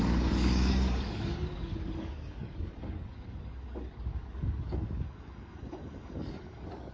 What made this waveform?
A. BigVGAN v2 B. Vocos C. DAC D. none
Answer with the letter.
C